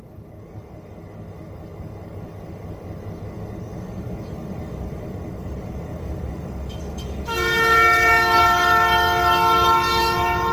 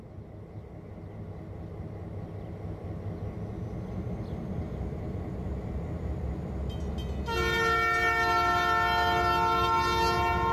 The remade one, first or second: first